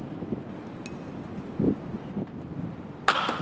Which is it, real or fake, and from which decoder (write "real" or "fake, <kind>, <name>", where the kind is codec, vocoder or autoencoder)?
real